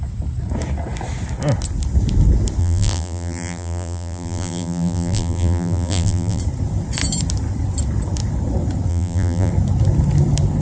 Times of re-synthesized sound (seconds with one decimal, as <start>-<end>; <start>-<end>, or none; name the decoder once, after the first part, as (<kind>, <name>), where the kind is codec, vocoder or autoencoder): 2.6-6.4 (vocoder, BigVGAN v2); 8.9-9.5